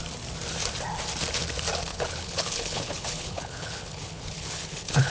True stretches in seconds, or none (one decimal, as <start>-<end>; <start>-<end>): 0.0-1.9